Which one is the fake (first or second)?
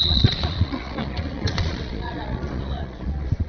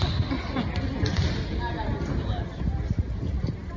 first